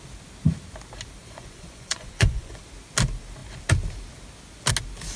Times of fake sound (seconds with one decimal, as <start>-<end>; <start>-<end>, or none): 1.2-2.6

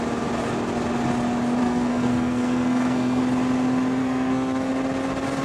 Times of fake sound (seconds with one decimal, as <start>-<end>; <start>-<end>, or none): 1.6-3.2; 4.0-4.7

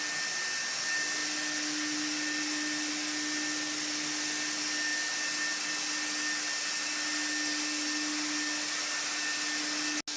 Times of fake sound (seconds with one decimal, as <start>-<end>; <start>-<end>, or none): none

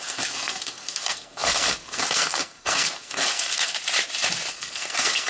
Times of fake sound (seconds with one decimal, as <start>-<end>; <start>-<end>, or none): 0.0-3.8; 4.5-5.3

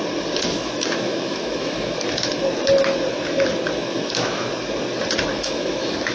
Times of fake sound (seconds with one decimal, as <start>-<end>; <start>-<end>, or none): 0.5-2.4; 3.8-4.5; 5.3-6.1

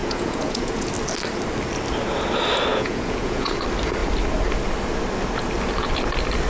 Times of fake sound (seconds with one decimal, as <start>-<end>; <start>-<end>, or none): 0.0-0.9; 2.7-3.6